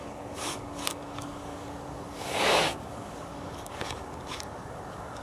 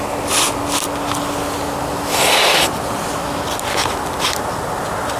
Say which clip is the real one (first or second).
second